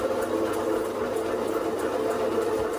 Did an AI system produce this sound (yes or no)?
no